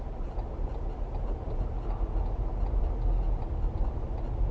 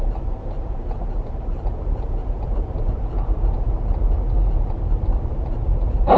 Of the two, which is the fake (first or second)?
second